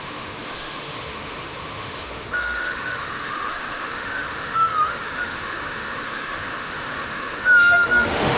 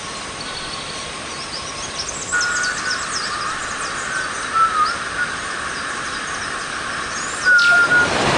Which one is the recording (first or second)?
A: second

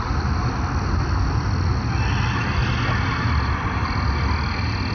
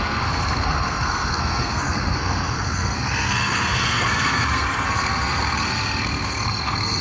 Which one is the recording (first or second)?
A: first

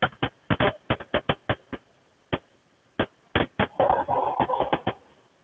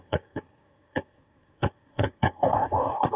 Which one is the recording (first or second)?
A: first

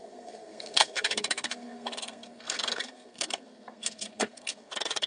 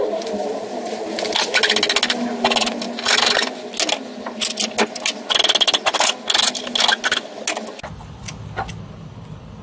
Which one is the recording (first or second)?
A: second